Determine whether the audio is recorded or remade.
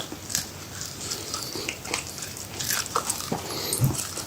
recorded